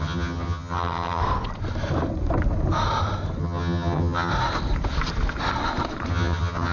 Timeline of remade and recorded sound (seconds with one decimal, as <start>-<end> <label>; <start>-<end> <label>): 0.0-1.2 remade; 1.2-3.4 recorded; 3.4-4.3 remade; 4.3-6.1 recorded; 6.1-6.7 remade